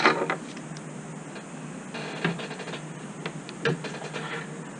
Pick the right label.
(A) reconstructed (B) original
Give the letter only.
B